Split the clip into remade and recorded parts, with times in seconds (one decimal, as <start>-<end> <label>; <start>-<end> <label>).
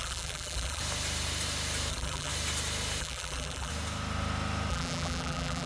0.0-0.8 remade; 0.8-1.9 recorded; 1.9-2.3 remade; 2.3-3.0 recorded; 3.0-3.7 remade; 3.7-4.7 recorded; 4.7-5.7 remade